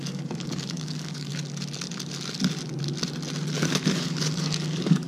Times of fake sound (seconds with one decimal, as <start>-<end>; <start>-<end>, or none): 0.0-1.3; 3.5-5.1